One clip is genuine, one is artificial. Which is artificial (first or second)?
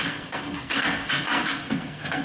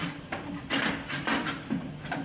first